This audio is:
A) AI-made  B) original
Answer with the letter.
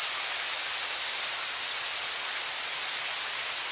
B